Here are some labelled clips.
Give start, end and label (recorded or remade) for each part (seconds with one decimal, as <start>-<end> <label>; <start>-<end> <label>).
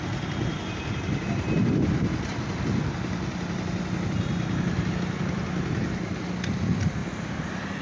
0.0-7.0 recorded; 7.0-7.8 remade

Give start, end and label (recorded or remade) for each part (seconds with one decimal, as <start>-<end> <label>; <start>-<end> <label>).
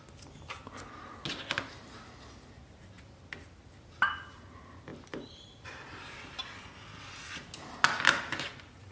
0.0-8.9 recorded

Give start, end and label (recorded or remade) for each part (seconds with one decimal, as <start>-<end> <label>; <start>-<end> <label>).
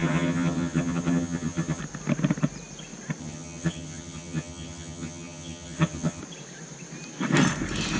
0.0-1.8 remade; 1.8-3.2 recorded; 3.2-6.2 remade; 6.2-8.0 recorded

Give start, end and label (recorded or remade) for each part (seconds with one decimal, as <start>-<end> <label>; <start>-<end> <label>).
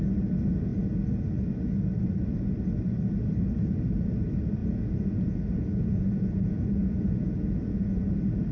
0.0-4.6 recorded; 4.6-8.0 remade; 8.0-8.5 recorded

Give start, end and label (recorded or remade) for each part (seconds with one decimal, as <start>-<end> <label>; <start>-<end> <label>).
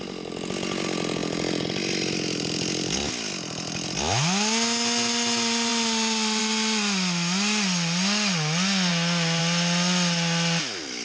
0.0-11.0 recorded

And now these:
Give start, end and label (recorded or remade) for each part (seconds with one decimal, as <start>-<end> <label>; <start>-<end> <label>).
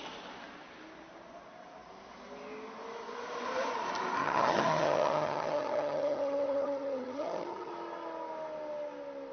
0.0-4.2 recorded; 4.2-7.7 remade; 7.7-9.3 recorded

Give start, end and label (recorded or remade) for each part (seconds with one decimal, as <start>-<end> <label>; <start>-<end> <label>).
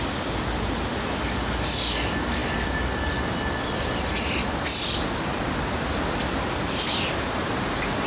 0.0-8.1 recorded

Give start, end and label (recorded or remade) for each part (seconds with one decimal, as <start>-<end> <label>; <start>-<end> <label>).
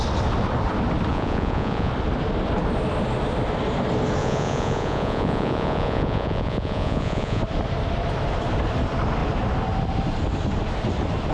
0.0-1.1 recorded; 1.1-1.9 remade; 1.9-4.2 recorded; 4.2-7.4 remade; 7.4-11.3 recorded